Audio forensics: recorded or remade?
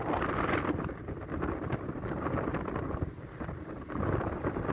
recorded